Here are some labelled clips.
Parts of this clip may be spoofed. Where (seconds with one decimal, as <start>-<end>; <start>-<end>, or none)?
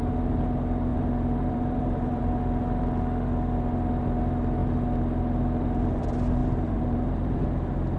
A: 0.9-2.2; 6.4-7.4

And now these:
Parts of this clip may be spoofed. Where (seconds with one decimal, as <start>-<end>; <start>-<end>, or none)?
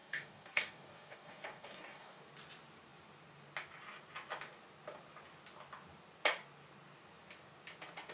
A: 0.0-2.2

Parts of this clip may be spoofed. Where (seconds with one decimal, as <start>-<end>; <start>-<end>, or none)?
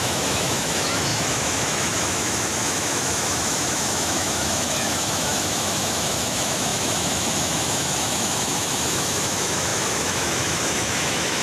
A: 0.0-11.4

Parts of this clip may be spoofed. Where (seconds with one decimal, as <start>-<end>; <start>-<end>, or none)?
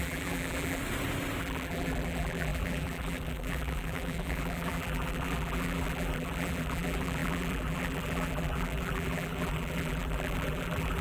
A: 0.0-0.8; 1.4-11.0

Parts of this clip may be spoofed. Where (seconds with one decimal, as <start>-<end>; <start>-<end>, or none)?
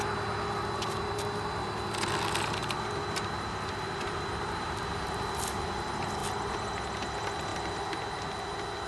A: 2.6-4.8; 7.5-8.0